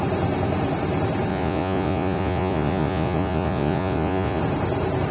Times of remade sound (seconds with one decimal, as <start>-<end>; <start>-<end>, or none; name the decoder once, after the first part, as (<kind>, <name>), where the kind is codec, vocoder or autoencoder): 1.3-4.4 (vocoder, Vocos)